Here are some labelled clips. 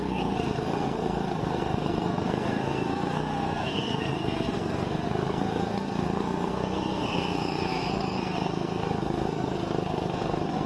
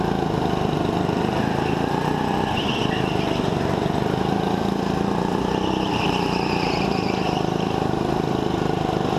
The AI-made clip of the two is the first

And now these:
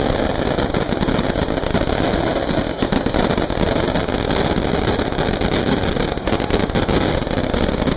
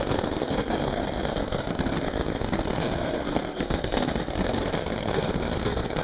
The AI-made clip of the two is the second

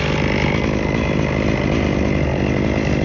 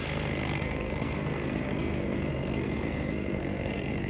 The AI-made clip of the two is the second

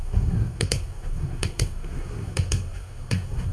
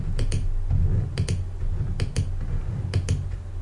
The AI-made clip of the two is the first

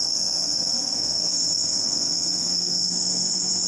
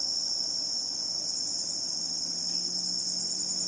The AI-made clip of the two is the first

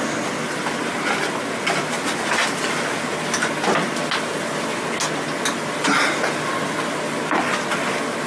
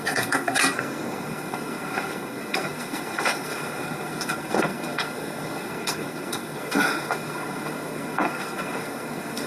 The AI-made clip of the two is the second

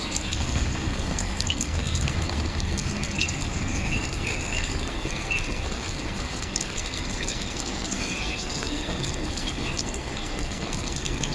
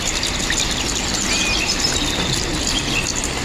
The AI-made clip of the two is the first